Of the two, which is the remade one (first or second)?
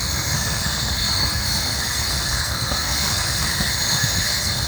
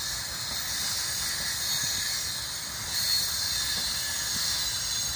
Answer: first